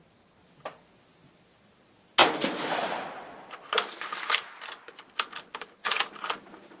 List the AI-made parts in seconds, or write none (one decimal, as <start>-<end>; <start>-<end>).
none